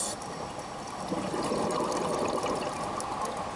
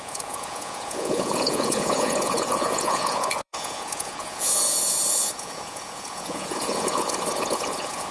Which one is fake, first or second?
second